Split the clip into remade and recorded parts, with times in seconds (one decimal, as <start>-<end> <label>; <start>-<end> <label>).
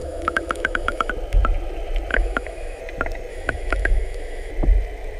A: 0.0-1.1 remade; 1.1-2.1 recorded; 2.1-2.8 remade; 2.8-3.3 recorded; 3.3-4.5 remade; 4.5-5.2 recorded